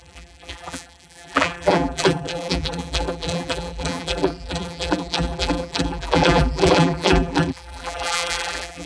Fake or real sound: fake